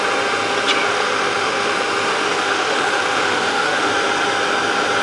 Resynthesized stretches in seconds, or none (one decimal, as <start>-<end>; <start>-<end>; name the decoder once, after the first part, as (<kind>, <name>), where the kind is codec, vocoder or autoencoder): 0.9-1.7 (autoencoder, DAC-VAE); 2.1-3.9